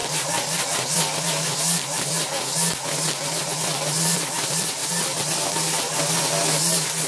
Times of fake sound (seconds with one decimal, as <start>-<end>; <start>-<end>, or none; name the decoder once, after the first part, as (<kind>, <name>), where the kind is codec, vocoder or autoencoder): 4.8-6.5 (vocoder, BigVGAN v2)